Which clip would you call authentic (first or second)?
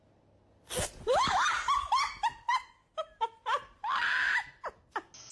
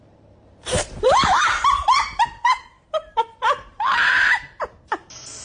first